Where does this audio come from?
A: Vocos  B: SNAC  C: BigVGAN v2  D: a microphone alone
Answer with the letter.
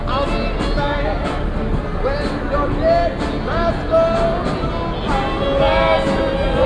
D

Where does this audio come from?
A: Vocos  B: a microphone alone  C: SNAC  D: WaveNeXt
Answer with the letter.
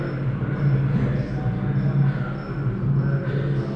B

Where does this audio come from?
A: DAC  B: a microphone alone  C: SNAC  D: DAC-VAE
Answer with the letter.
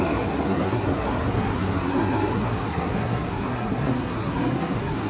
C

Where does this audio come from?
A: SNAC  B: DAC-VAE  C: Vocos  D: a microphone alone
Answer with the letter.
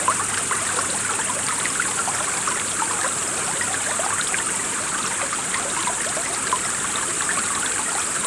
D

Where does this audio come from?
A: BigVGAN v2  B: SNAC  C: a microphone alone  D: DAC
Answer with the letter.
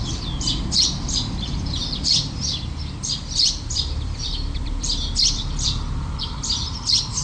A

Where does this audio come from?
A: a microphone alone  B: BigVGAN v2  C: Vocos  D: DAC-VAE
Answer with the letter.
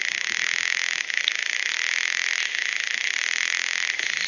A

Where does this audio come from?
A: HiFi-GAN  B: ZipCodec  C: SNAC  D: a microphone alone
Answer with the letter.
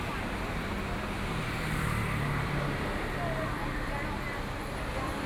D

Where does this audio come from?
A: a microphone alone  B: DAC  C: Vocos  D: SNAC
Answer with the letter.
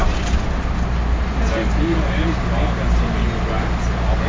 A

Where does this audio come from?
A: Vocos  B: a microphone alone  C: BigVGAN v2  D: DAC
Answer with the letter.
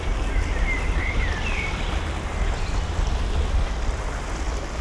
B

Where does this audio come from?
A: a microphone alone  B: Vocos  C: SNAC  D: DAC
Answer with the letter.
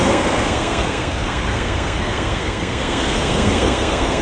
C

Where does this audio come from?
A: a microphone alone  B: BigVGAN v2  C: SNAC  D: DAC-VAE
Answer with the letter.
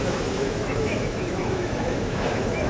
D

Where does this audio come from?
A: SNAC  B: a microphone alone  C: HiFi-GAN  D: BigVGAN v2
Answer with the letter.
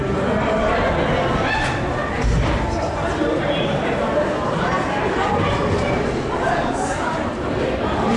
B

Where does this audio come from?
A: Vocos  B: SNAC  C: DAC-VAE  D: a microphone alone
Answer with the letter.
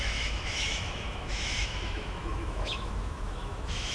C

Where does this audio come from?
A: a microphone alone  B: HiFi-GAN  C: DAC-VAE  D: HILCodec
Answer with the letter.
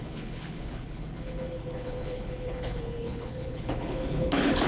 D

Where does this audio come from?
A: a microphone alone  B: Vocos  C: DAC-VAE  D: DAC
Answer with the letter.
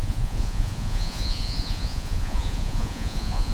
B